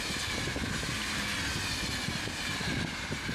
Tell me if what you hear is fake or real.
real